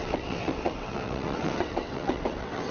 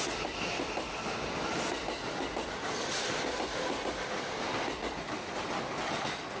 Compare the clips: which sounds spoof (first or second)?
first